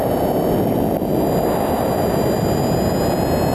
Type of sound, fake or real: real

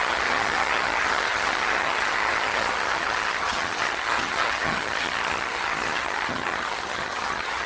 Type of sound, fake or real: fake